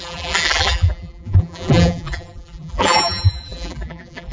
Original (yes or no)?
no